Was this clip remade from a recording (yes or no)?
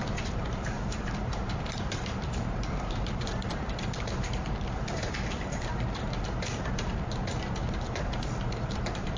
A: yes